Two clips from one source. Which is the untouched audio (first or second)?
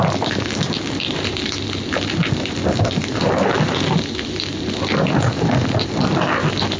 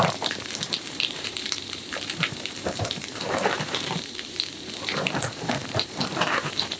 first